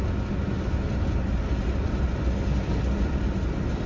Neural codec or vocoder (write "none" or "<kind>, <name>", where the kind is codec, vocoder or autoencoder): none